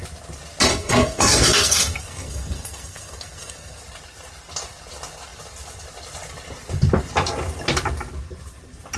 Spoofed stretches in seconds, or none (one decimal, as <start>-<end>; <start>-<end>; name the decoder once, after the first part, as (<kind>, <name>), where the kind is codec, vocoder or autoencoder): 0.7-3.8 (codec, SNAC)